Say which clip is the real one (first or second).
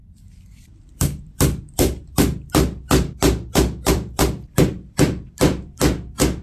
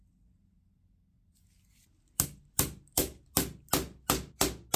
second